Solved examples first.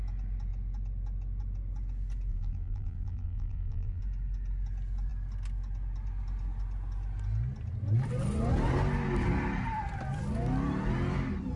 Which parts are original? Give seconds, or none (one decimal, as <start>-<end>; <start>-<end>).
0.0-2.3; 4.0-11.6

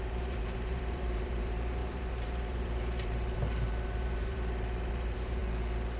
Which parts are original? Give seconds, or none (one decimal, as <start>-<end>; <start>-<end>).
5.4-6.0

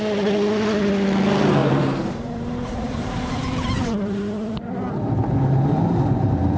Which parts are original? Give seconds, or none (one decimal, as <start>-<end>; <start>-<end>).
0.0-1.6; 4.9-6.6